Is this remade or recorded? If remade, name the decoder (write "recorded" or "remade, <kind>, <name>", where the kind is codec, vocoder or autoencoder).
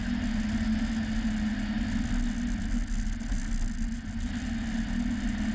recorded